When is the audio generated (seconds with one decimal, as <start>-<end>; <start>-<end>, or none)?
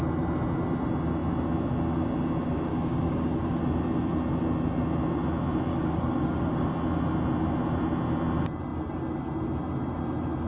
2.7-3.6; 5.7-6.7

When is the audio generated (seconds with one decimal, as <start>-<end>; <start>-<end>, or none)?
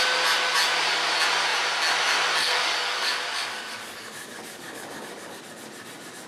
2.4-5.4